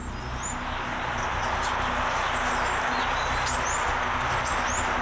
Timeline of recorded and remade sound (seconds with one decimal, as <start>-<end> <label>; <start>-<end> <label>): 0.0-5.0 recorded